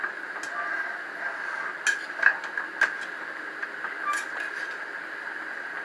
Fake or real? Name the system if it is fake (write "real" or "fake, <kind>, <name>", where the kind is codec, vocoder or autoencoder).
real